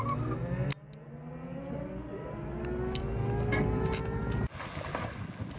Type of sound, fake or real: real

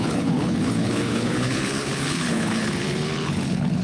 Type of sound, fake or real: fake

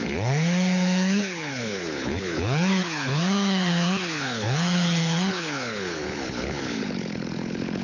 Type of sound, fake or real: fake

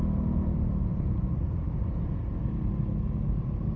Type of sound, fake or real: real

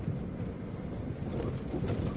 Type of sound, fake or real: real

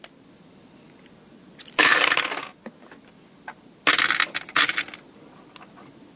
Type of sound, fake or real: real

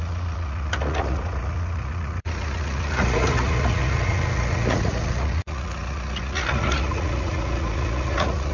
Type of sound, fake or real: fake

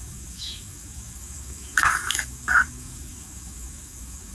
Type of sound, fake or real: fake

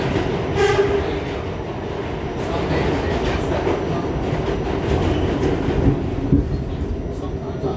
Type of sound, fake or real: real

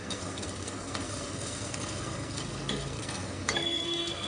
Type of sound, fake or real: fake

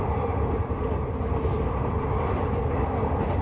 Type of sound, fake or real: real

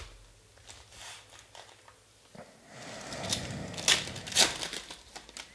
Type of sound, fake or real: real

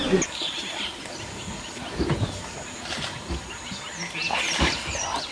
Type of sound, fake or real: real